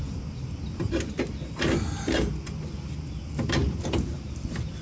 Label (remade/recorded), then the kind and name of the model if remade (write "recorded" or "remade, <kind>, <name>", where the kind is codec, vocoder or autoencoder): recorded